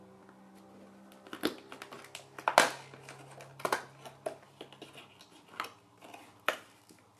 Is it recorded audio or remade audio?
recorded